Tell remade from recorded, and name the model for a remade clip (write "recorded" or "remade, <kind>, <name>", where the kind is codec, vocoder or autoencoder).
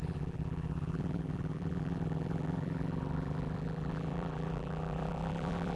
remade, vocoder, BigVGAN v2